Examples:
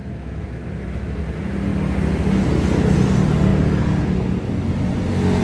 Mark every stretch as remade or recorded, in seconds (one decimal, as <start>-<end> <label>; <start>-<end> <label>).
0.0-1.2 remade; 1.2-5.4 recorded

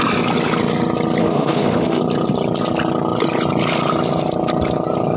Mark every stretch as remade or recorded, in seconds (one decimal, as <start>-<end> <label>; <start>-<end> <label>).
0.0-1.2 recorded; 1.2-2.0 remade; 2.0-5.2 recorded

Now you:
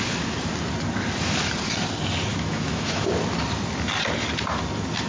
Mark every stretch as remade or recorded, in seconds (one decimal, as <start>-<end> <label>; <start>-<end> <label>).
0.0-2.3 recorded; 2.3-3.1 remade; 3.1-5.1 recorded